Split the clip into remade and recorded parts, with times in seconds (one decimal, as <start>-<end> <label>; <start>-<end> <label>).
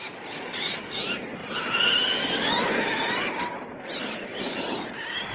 0.0-5.3 recorded